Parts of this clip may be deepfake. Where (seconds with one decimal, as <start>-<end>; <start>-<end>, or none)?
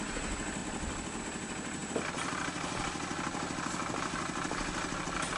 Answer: 0.6-1.2